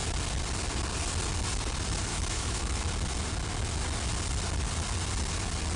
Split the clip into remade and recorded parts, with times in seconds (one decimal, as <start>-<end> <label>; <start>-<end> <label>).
0.0-2.1 recorded; 2.1-2.8 remade; 2.8-5.8 recorded